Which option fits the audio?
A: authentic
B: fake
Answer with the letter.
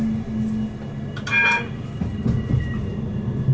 A